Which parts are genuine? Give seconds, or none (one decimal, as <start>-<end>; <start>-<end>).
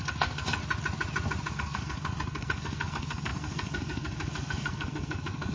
0.6-1.5